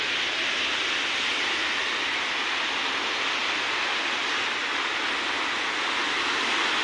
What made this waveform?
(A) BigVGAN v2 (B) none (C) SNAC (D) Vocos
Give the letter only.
B